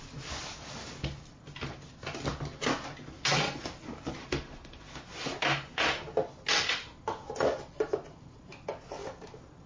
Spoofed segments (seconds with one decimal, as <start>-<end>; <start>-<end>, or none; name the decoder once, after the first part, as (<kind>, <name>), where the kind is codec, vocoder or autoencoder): 4.2-4.9 (autoencoder, DAC-VAE)